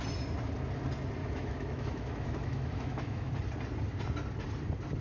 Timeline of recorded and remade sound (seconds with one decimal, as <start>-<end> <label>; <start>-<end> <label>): 0.0-1.2 recorded; 1.2-3.3 remade; 3.3-5.0 recorded